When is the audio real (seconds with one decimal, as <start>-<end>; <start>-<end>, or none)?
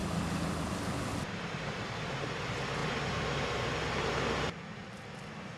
0.0-5.6